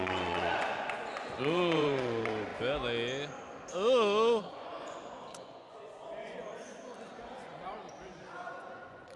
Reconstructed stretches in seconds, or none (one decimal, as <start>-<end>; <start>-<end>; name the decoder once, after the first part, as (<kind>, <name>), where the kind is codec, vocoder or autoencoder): 0.0-2.5 (vocoder, Vocos); 4.4-6.5; 7.2-9.2